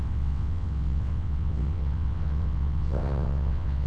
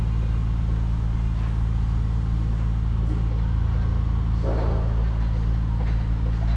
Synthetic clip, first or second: first